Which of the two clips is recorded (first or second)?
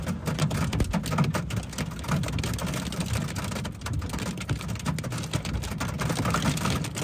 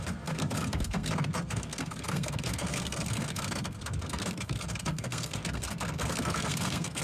first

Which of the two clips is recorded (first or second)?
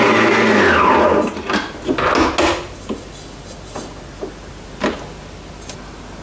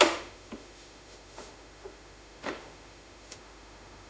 first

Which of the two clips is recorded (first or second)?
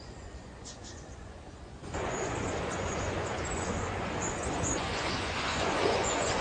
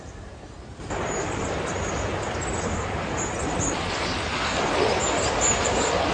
second